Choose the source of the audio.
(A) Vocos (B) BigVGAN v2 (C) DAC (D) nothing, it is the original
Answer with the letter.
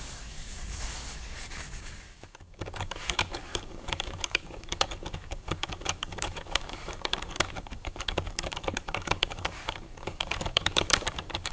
C